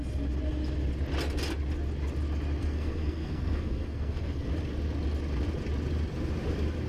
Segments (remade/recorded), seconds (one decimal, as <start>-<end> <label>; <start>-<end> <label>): 0.0-2.6 recorded; 2.6-4.5 remade; 4.5-6.9 recorded